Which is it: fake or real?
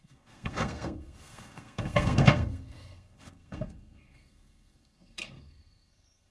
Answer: fake